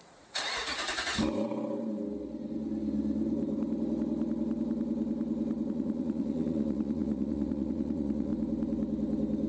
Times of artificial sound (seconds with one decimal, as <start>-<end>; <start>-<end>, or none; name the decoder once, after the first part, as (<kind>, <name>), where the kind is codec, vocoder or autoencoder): 0.0-1.1 (vocoder, Vocos); 5.7-8.3